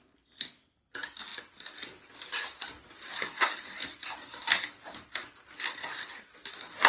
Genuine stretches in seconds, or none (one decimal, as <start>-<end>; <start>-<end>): 0.0-6.9